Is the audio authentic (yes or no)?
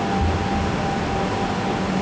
yes